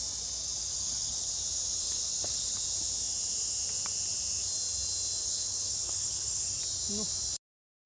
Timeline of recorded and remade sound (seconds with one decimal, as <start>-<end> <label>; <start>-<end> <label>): 0.0-0.7 recorded; 0.7-1.3 remade; 1.3-1.8 recorded; 1.8-2.6 remade; 2.6-5.2 recorded; 5.2-6.5 remade; 6.5-7.9 recorded